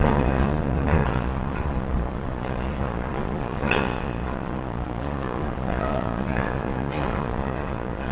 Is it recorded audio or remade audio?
remade